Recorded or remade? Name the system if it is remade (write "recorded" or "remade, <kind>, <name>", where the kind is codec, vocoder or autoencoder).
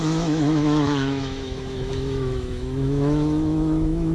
remade, autoencoder, DAC-VAE